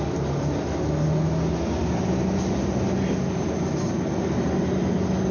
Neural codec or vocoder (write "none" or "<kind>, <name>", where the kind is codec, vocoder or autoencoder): none